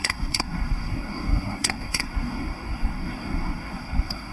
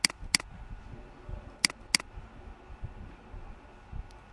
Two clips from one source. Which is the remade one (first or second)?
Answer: first